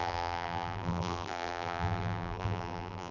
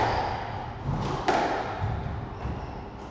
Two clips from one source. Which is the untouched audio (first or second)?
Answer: second